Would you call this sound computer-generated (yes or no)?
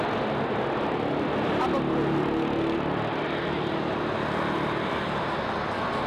no